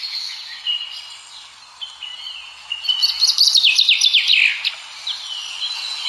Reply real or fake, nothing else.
real